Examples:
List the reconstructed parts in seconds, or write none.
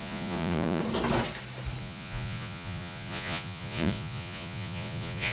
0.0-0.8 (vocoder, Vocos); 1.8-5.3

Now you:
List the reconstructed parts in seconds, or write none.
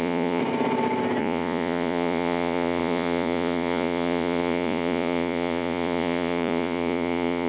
0.0-0.4 (vocoder, Vocos); 1.2-7.5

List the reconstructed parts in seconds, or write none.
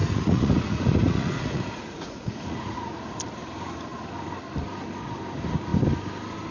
0.0-3.1 (vocoder, Vocos)